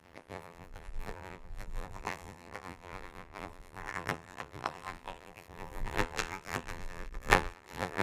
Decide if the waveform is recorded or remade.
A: remade